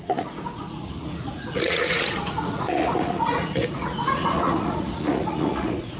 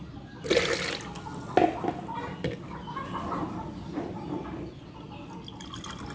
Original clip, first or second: second